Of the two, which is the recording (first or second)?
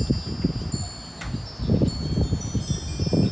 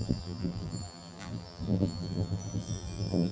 first